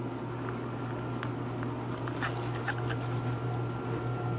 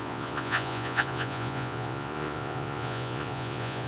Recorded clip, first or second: first